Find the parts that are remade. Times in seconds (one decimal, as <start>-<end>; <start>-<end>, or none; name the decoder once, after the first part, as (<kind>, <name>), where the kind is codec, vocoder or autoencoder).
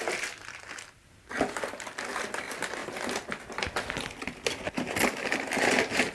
none